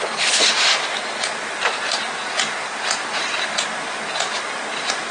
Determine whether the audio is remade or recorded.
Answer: recorded